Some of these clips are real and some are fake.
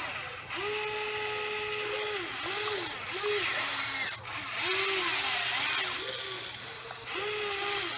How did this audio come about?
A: real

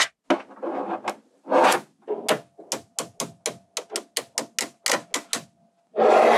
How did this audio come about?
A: real